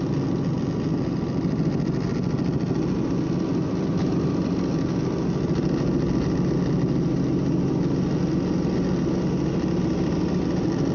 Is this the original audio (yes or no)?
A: yes